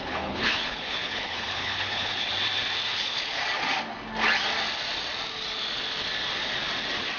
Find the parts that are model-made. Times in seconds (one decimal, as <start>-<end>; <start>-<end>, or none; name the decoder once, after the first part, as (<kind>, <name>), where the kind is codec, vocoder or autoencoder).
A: 0.0-2.3 (codec, HILCodec); 2.9-3.4